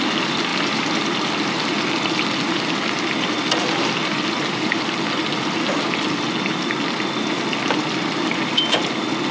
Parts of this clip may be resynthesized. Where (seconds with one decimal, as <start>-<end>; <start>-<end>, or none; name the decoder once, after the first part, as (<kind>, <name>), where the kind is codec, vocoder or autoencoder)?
none